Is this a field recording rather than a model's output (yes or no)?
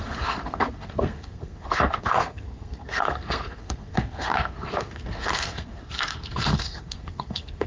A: no